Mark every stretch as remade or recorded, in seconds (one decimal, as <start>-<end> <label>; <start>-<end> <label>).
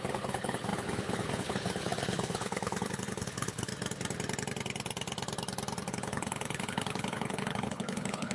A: 0.0-3.7 remade; 3.7-5.9 recorded; 5.9-8.3 remade